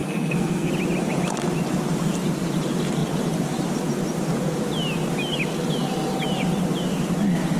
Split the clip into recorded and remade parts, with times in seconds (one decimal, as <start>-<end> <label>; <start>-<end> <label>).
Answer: 0.0-0.7 remade; 0.7-7.6 recorded

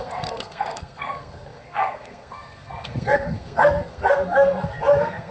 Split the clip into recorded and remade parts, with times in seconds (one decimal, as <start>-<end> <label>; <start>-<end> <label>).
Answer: 0.0-5.3 remade

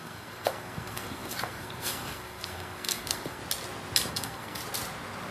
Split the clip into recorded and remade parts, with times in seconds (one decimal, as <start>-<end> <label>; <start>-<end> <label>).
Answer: 0.0-3.4 remade; 3.4-4.1 recorded; 4.1-4.6 remade; 4.6-5.3 recorded

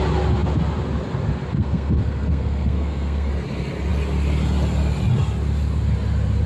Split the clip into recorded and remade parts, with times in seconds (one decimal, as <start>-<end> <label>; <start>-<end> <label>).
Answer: 0.0-1.5 recorded; 1.5-3.3 remade; 3.3-6.5 recorded

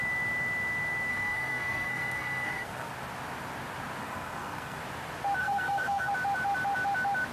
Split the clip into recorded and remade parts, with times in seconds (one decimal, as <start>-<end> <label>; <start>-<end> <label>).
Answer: 0.0-1.1 recorded; 1.1-2.9 remade; 2.9-4.0 recorded; 4.0-4.8 remade; 4.8-5.4 recorded; 5.4-6.1 remade; 6.1-7.3 recorded

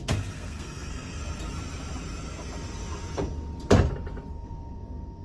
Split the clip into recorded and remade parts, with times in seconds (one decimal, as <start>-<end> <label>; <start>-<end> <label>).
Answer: 0.0-1.2 remade; 1.2-4.3 recorded; 4.3-5.2 remade

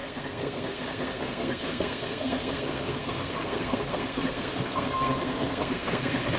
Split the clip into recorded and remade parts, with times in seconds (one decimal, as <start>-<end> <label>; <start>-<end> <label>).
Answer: 0.0-6.4 remade

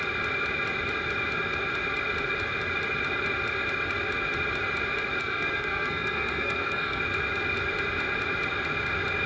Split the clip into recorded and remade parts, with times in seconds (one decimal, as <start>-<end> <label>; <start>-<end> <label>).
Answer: 0.0-5.2 recorded; 5.2-7.0 remade; 7.0-9.3 recorded